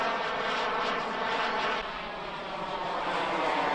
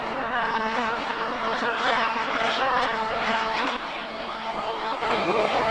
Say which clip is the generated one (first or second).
second